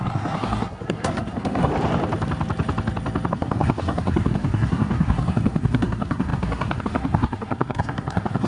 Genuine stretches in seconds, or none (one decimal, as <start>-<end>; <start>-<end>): 1.7-3.3